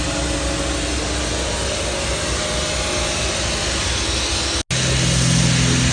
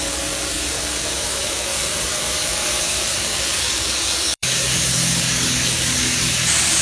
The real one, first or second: first